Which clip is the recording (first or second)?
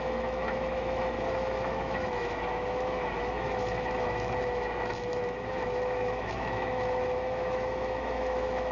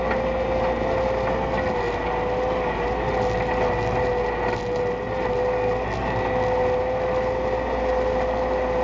second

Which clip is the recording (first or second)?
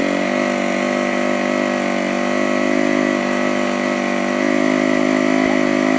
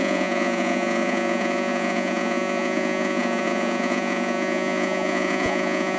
first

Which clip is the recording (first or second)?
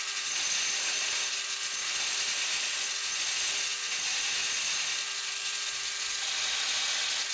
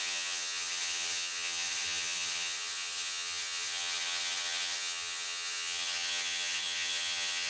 first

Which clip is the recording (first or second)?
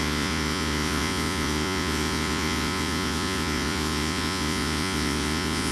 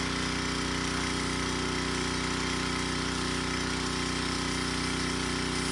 second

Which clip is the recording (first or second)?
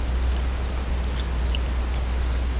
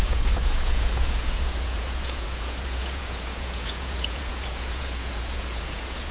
first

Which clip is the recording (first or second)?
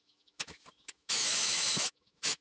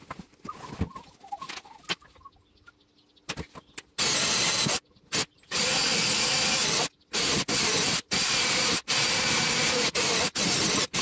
second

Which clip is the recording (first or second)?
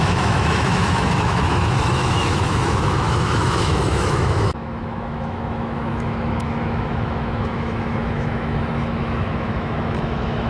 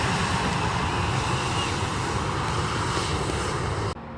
second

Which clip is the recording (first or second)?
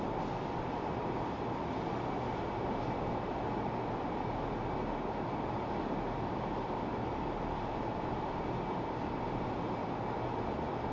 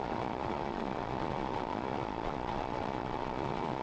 first